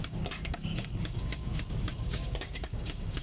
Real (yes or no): no